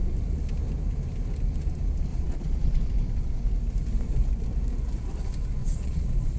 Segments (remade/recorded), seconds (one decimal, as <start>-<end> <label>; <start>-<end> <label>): 0.0-2.1 recorded; 2.1-2.9 remade; 2.9-5.6 recorded; 5.6-6.4 remade